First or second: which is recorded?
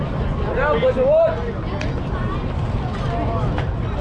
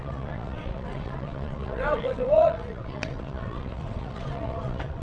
first